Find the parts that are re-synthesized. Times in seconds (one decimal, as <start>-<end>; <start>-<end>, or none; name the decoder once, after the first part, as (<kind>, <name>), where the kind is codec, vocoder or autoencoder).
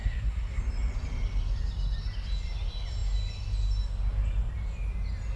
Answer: 0.0-0.6 (codec, SNAC)